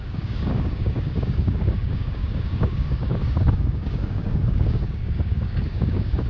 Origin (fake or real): fake